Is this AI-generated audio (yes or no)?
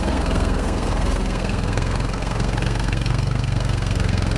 yes